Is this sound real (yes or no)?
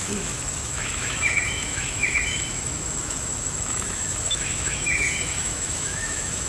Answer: no